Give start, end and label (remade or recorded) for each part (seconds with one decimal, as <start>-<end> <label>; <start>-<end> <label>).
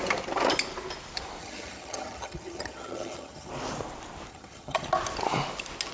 0.0-1.4 recorded; 1.4-3.5 remade; 3.5-4.3 recorded; 4.3-4.9 remade; 4.9-5.9 recorded